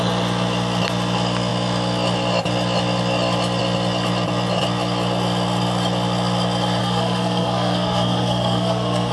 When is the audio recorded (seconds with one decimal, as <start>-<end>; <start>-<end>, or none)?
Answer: 0.0-6.8